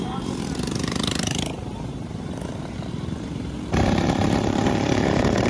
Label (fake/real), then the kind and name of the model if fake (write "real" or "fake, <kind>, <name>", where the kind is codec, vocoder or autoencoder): fake, vocoder, BigVGAN v2